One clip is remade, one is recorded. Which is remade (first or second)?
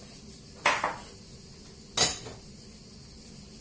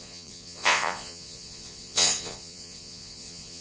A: second